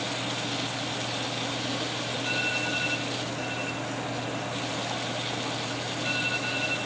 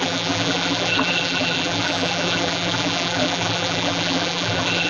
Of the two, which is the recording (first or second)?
first